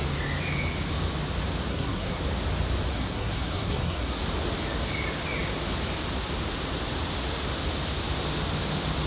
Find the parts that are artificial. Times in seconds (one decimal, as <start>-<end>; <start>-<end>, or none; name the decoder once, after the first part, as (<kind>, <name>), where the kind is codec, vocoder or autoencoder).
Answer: 1.7-2.2 (codec, SNAC); 2.9-4.2